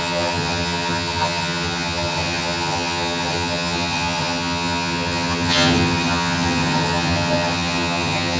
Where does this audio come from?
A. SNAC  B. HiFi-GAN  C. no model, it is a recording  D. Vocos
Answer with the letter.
B